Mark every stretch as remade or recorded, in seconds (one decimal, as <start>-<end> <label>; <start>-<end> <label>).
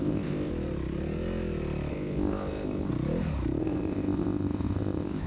0.0-0.5 remade; 0.5-1.9 recorded; 1.9-2.9 remade; 2.9-3.6 recorded; 3.6-5.3 remade